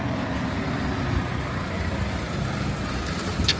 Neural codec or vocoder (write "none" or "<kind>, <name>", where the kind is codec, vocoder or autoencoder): none